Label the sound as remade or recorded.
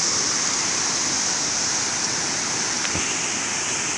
recorded